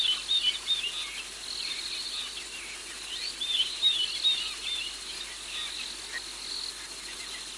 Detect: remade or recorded recorded